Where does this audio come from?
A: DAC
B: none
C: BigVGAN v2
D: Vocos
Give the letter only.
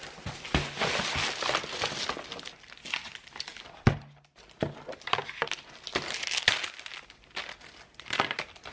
B